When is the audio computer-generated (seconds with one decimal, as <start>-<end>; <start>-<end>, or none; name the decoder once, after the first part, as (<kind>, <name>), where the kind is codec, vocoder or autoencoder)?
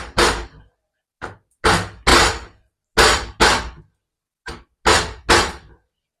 none